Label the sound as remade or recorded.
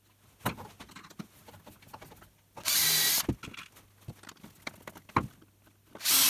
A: recorded